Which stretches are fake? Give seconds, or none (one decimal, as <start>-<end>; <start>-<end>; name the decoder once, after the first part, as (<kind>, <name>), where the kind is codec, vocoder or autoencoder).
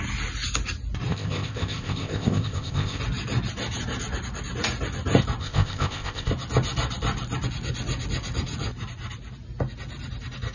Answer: 1.1-3.0 (codec, ZipCodec); 5.4-6.3